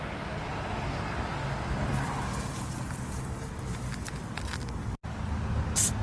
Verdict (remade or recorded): recorded